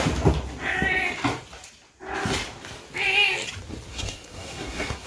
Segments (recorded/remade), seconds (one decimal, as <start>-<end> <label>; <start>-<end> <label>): 0.0-3.9 recorded; 3.9-5.1 remade